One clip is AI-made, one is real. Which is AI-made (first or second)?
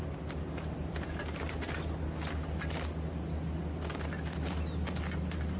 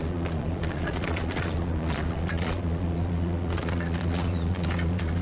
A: second